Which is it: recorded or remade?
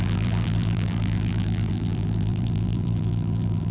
remade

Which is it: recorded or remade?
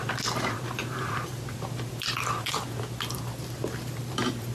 remade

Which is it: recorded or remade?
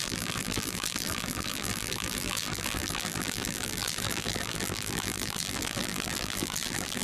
remade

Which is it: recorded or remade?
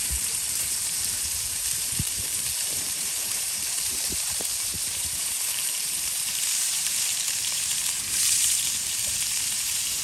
remade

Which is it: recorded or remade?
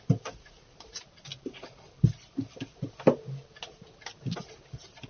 recorded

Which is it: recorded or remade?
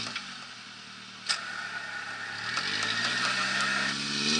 recorded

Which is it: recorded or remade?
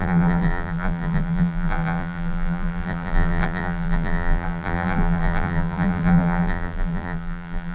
remade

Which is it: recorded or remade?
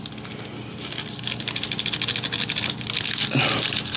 recorded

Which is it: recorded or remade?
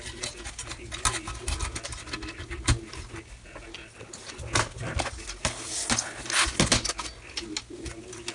recorded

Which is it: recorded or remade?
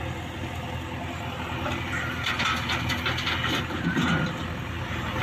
recorded